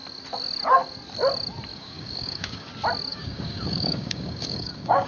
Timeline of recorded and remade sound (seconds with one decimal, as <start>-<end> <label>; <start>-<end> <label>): 0.0-1.7 recorded; 1.7-2.7 remade; 2.7-3.1 recorded; 3.1-5.1 remade